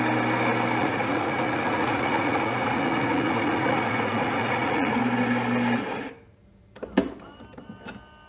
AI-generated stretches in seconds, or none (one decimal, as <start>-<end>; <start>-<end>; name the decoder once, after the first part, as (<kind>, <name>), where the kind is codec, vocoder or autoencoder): 0.8-5.0 (vocoder, Vocos)